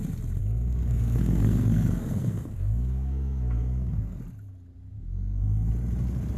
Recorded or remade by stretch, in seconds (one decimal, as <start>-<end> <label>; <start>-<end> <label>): 0.0-0.4 recorded; 0.4-4.2 remade; 4.2-4.9 recorded; 4.9-5.7 remade; 5.7-6.4 recorded